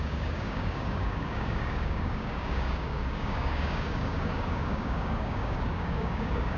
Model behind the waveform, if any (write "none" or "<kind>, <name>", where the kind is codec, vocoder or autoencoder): codec, DAC